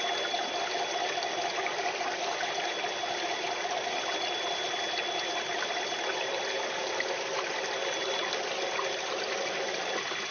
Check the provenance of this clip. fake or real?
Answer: real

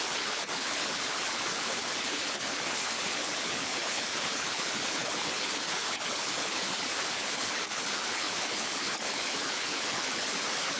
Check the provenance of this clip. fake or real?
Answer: fake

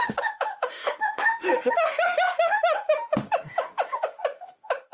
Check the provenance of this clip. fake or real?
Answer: fake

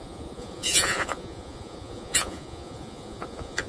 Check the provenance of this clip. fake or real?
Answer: fake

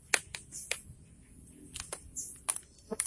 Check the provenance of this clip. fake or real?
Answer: real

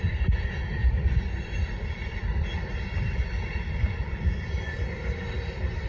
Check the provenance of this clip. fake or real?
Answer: real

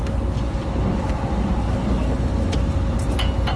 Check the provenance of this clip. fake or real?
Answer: real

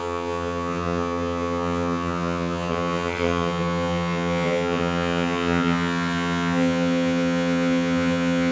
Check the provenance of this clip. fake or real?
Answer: fake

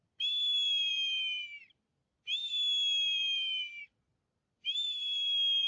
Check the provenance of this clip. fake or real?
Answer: fake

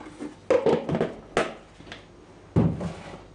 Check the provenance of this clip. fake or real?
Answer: real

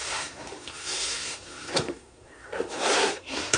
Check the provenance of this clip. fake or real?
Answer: fake